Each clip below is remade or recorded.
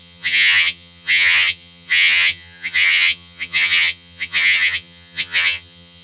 remade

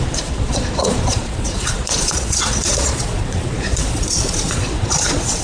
remade